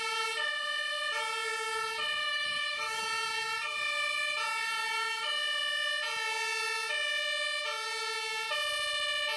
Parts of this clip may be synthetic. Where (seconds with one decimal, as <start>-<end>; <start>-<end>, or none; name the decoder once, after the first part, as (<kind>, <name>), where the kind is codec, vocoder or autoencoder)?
2.2-3.0 (codec, DAC)